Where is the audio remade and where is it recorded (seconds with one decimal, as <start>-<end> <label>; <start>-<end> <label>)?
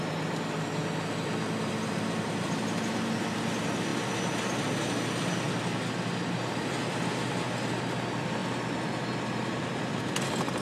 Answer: 0.0-10.6 recorded